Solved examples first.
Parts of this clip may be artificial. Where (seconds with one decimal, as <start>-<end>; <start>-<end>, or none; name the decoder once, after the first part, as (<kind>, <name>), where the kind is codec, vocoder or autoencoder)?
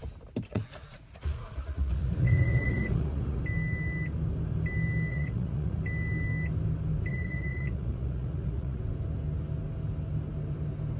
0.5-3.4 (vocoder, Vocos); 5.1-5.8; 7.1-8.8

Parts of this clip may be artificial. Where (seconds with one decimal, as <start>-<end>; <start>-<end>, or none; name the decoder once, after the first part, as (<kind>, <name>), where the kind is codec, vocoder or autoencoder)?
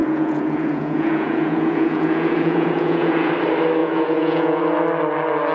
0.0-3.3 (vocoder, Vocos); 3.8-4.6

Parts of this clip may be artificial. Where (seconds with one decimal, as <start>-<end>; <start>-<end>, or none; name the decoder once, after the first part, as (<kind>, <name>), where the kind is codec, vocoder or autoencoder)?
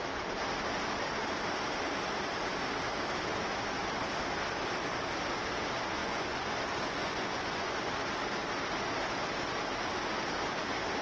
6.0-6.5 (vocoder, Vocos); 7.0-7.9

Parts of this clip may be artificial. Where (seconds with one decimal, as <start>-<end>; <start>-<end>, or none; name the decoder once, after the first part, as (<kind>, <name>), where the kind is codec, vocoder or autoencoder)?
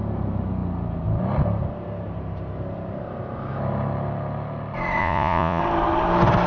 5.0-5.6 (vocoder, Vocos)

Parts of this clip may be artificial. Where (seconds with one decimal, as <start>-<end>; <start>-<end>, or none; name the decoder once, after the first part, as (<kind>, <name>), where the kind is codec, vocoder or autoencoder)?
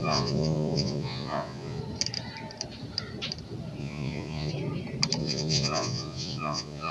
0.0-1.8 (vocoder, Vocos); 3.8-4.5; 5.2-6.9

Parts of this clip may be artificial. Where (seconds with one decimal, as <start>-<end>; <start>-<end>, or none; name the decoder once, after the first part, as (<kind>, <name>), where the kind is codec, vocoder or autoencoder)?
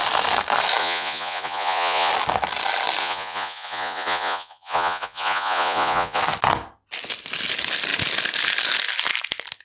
0.8-2.1 (vocoder, Vocos); 3.0-6.2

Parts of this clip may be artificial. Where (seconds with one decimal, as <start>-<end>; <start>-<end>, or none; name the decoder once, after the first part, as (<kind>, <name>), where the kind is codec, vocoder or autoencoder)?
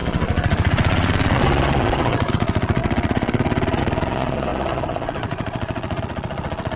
0.0-6.8 (vocoder, Vocos)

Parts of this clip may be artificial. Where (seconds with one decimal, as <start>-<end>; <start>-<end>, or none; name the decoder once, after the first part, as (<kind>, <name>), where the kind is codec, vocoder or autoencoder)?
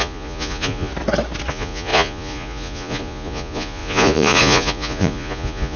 0.0-0.9 (vocoder, Vocos); 1.5-5.8